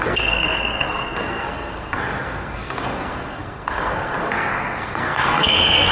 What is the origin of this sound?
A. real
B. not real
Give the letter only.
B